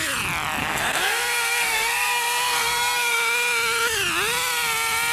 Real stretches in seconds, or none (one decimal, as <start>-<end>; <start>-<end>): 0.0-0.6; 3.2-5.1